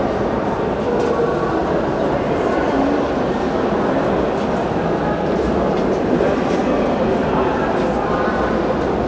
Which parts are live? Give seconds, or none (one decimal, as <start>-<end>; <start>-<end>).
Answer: 0.0-1.6; 6.6-9.1